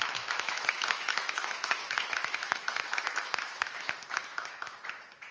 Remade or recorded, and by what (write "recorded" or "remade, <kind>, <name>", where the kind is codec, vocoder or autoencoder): remade, autoencoder, DAC-VAE